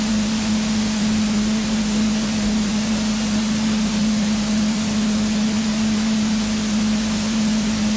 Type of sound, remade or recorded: recorded